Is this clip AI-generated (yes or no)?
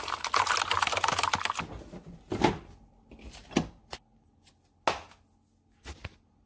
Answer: no